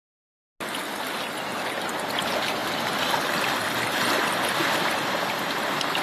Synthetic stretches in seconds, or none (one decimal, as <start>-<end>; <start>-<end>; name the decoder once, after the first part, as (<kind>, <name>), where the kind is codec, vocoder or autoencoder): none